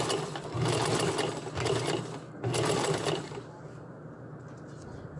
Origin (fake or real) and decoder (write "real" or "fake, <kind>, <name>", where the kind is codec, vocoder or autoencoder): real